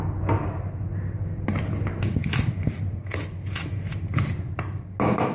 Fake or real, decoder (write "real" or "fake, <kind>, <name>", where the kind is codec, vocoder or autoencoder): real